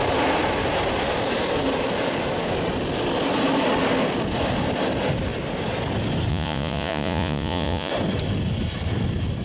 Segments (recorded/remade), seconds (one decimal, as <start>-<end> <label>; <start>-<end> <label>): 0.0-6.3 recorded; 6.3-7.9 remade; 7.9-9.4 recorded